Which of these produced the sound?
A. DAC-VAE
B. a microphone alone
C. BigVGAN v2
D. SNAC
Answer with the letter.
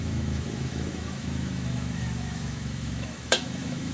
A